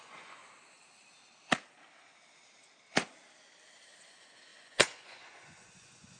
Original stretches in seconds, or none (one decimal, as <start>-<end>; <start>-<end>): 0.4-4.1